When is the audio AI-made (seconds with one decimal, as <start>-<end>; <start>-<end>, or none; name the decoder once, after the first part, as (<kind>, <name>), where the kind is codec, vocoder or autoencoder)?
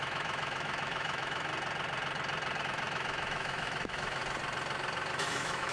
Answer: 0.0-1.5 (autoencoder, DAC-VAE); 2.6-4.2; 5.1-5.7